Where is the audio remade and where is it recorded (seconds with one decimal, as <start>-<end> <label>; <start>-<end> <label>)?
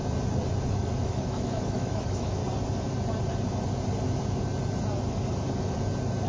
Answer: 0.0-0.7 recorded; 0.7-2.4 remade; 2.4-6.3 recorded